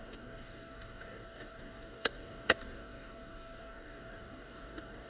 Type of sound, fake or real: fake